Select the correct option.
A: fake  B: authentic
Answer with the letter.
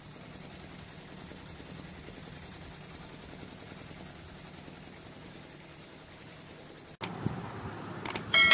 B